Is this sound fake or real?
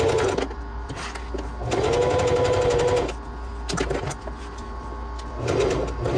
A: real